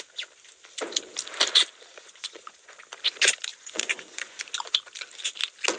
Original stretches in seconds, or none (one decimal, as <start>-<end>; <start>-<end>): 0.0-1.9; 2.8-3.5; 4.4-5.8